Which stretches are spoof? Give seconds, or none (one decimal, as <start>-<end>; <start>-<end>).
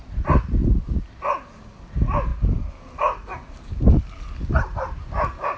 none